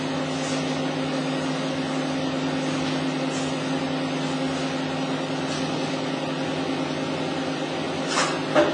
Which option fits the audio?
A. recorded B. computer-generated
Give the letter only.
A